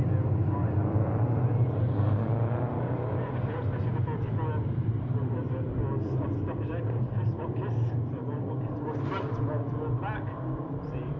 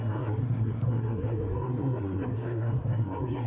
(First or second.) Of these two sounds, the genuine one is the first